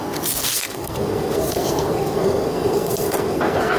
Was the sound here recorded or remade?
remade